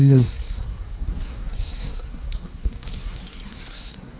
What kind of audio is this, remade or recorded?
remade